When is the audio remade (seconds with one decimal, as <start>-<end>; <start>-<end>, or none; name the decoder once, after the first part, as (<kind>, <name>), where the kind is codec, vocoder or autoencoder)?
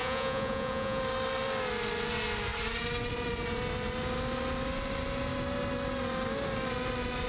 0.0-1.0 (vocoder, Vocos)